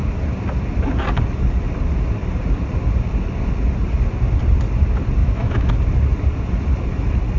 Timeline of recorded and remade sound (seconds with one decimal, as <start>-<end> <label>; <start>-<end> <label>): 0.0-5.2 recorded; 5.2-5.7 remade; 5.7-7.4 recorded